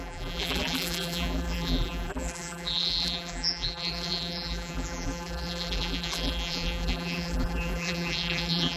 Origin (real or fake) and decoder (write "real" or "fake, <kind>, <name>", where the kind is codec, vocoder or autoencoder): fake, vocoder, BigVGAN v2